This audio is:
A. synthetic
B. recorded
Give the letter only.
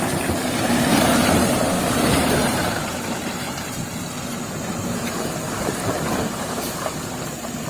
A